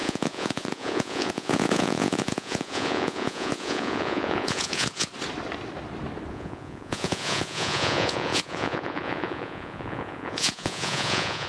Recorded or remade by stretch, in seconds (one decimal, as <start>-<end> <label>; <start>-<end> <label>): 0.0-5.1 remade; 5.1-6.3 recorded; 6.3-11.5 remade